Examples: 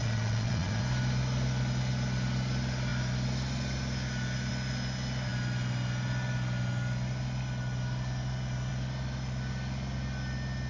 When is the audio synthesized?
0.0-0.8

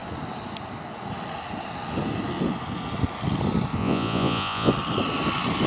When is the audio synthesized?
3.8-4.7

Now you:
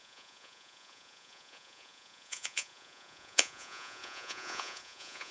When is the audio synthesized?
0.0-5.3

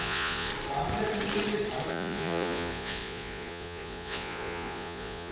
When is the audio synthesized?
0.0-0.5; 1.9-5.3